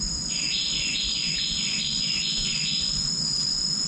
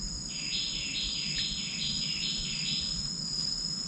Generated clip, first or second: first